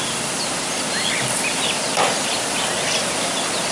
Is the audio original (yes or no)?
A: yes